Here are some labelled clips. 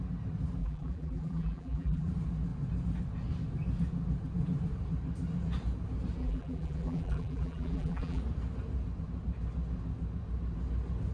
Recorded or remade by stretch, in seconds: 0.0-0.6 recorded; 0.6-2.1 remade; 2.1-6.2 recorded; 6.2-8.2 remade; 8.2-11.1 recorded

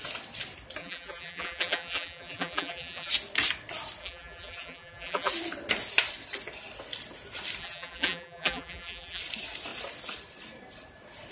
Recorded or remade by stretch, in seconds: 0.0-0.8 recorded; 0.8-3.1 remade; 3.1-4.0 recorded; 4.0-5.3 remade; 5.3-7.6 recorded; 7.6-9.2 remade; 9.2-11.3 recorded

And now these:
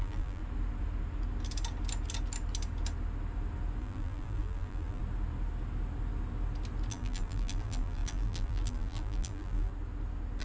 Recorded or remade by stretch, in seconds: 0.0-0.4 remade; 0.4-3.8 recorded; 3.8-5.0 remade; 5.0-6.9 recorded; 6.9-9.7 remade; 9.7-10.4 recorded

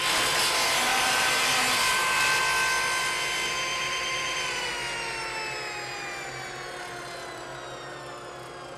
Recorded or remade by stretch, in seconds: 0.0-0.9 recorded; 0.9-2.4 remade; 2.4-3.7 recorded; 3.7-4.7 remade; 4.7-8.8 recorded

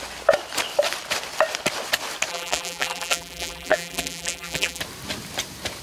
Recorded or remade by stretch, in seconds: 0.0-2.3 recorded; 2.3-4.8 remade; 4.8-5.8 recorded

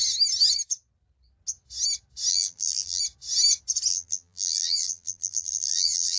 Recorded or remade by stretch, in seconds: 0.0-2.3 recorded; 2.3-3.0 remade; 3.0-3.9 recorded; 3.9-6.2 remade

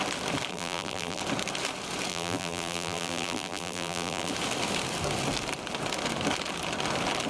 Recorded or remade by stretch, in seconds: 0.0-0.5 recorded; 0.5-1.2 remade; 1.2-2.1 recorded; 2.1-4.3 remade; 4.3-7.3 recorded

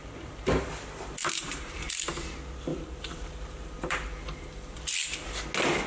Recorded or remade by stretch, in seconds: 0.0-0.7 remade; 0.7-1.2 recorded; 1.2-2.0 remade; 2.0-2.7 recorded; 2.7-4.8 remade; 4.8-5.9 recorded